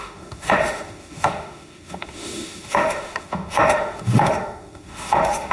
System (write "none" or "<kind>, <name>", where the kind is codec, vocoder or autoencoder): autoencoder, DAC-VAE